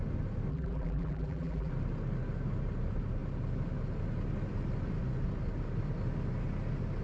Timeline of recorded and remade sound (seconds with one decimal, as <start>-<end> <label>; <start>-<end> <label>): 0.0-0.5 recorded; 0.5-1.7 remade; 1.7-7.0 recorded